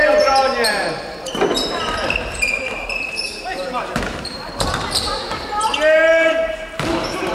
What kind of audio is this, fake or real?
fake